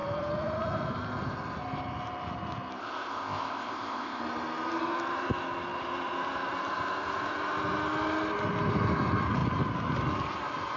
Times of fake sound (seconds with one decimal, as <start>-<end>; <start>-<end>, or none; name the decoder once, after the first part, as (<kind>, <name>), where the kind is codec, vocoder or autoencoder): 2.8-4.2 (codec, ZipCodec)